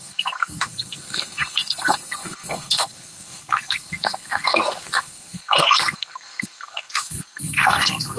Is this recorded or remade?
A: remade